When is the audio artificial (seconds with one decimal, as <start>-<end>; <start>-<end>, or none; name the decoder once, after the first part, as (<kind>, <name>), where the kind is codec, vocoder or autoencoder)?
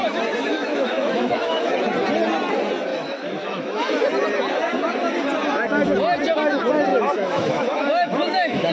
0.5-1.7 (autoencoder, DAC-VAE); 2.9-4.0; 6.9-8.7